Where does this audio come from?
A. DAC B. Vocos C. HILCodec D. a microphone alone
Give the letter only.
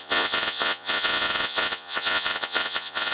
B